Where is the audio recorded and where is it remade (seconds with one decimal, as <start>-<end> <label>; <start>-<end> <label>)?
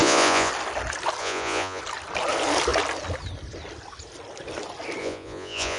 0.0-0.5 remade; 0.5-1.2 recorded; 1.2-1.8 remade; 1.8-5.0 recorded; 5.0-5.8 remade